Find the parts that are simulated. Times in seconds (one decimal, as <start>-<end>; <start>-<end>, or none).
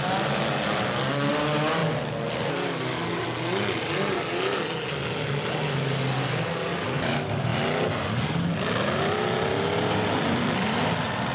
none